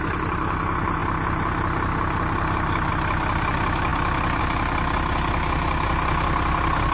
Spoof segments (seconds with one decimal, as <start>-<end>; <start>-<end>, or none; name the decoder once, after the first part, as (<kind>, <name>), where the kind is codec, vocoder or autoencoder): none